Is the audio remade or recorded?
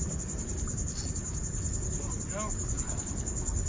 recorded